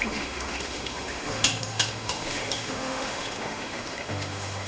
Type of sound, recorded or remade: remade